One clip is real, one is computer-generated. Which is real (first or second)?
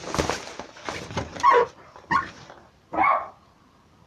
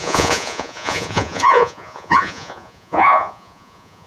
first